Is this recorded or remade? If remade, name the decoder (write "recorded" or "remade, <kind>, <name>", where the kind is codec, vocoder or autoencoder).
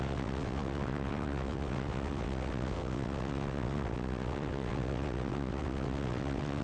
remade, vocoder, WaveNeXt